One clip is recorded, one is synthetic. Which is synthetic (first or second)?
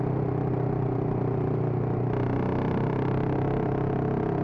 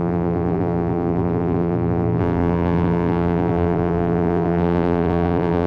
second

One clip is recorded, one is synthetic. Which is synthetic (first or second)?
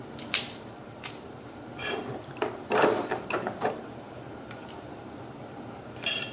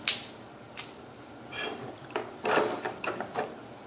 first